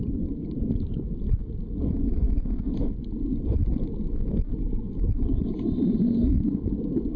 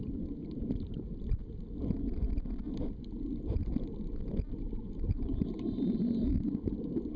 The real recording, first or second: first